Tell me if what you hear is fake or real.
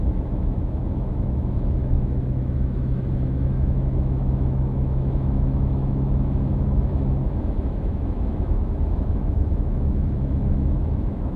fake